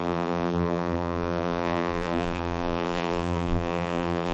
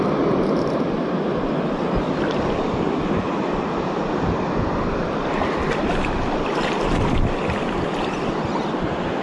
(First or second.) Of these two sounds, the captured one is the second